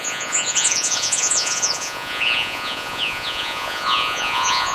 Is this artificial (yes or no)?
yes